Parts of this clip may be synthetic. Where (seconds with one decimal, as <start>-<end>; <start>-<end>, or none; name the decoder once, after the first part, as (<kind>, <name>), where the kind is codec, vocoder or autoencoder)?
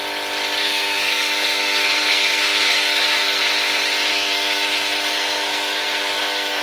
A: 0.6-3.4 (codec, SNAC); 4.1-6.6